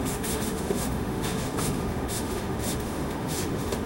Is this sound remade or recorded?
remade